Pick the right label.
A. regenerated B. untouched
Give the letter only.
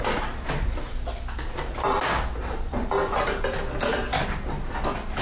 B